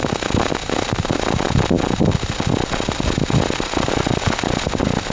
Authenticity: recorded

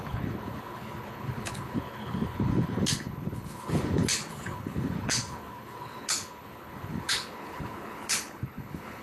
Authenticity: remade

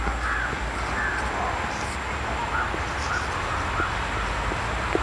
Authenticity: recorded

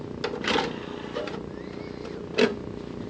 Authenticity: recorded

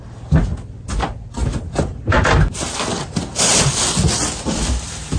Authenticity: recorded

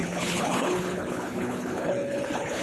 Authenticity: remade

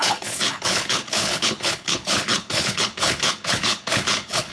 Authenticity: remade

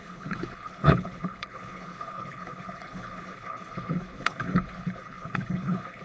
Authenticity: remade